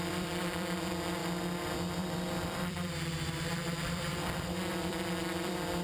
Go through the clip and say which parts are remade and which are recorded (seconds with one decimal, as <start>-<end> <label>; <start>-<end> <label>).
0.0-1.2 remade; 1.2-2.0 recorded; 2.0-5.8 remade